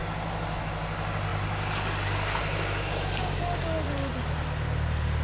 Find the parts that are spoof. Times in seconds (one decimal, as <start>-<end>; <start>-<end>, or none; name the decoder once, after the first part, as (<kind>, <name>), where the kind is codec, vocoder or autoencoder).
none